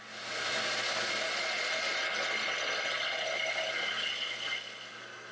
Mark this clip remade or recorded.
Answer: recorded